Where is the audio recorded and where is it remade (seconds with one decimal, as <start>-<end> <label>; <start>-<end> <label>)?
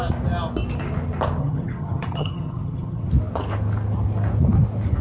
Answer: 0.0-1.4 recorded; 1.4-3.1 remade; 3.1-5.0 recorded